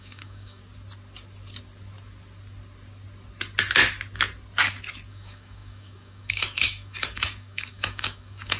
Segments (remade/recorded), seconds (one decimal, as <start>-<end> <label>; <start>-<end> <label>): 0.0-0.6 remade; 0.6-5.1 recorded; 5.1-8.6 remade